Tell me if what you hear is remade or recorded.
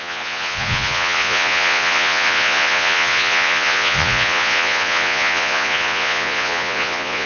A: remade